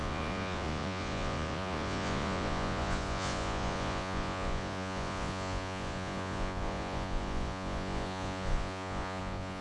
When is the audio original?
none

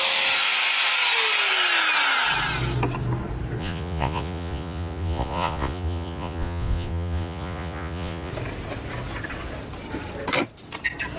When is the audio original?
0.0-3.6; 8.3-11.2

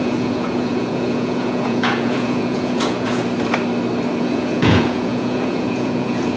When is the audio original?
3.2-4.2

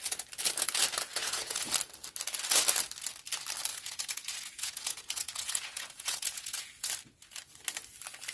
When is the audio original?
0.0-1.1; 1.7-3.7; 6.9-8.3